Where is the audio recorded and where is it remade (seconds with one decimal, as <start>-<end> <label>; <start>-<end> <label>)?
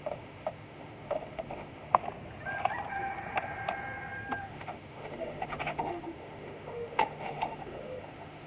0.0-2.0 remade; 2.0-4.4 recorded; 4.4-8.5 remade